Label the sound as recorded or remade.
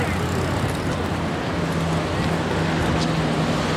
recorded